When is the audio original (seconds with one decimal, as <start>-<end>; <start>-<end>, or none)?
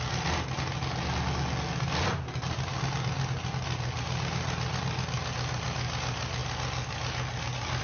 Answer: 0.0-7.8